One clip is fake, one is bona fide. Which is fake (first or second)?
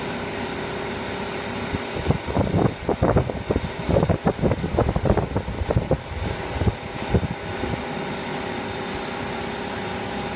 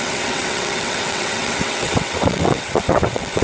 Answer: second